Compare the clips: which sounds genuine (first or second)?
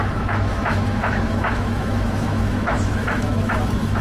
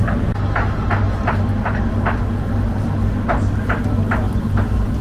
second